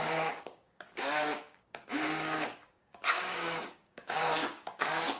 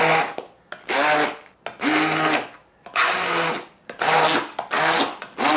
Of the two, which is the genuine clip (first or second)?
second